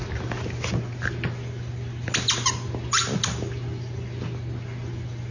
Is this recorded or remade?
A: recorded